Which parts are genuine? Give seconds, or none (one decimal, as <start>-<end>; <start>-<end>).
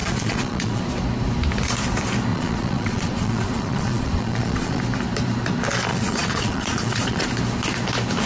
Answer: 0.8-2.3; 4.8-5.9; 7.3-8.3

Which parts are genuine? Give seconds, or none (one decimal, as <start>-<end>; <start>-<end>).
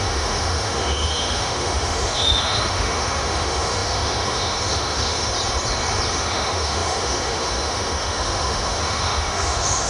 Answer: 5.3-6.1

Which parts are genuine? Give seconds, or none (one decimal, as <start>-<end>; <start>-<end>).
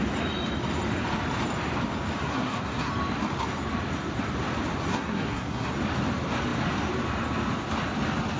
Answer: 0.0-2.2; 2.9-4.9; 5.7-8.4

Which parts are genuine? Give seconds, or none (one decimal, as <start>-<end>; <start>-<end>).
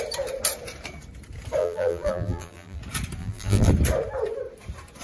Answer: 0.0-1.6; 2.8-3.2; 3.7-5.0